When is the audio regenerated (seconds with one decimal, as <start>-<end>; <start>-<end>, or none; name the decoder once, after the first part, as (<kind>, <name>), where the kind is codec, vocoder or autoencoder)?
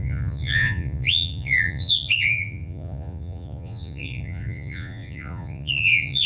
0.0-6.3 (vocoder, Vocos)